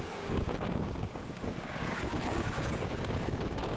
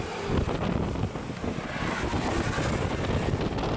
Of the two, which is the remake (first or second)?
first